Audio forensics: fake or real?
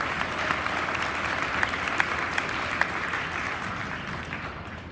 real